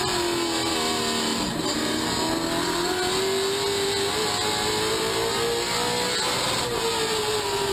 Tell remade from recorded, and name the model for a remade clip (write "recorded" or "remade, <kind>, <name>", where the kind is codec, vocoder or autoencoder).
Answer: recorded